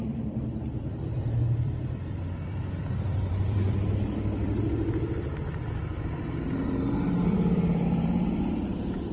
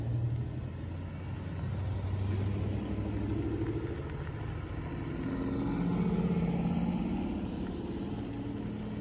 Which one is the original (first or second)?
second